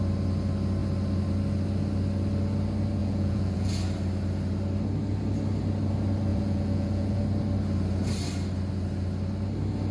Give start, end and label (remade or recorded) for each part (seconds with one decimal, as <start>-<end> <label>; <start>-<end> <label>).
0.0-3.0 recorded; 3.0-3.7 remade; 3.7-6.3 recorded; 6.3-7.2 remade; 7.2-9.9 recorded